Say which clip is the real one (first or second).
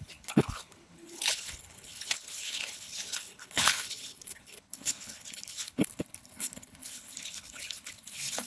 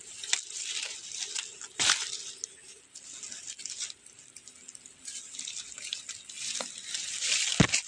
second